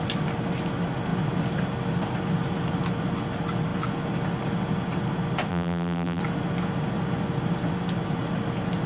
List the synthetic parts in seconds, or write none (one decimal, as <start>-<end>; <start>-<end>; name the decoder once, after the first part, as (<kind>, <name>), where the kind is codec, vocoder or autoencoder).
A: 5.5-6.2 (vocoder, BigVGAN v2)